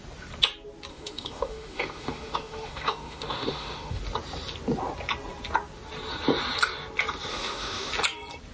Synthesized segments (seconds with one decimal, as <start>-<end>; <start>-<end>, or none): 0.9-4.0; 7.3-7.9